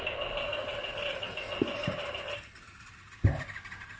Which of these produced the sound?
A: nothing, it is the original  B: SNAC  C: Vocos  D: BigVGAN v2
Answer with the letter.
A